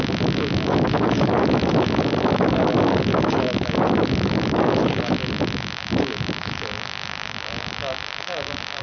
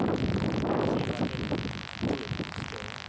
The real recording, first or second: second